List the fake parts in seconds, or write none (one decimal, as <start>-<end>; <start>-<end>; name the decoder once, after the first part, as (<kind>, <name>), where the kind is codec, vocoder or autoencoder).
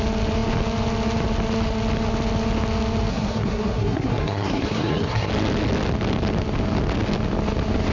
3.1-5.3 (codec, SNAC)